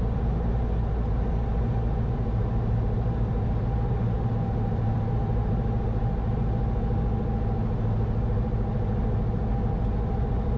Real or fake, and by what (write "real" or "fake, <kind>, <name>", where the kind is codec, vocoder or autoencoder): real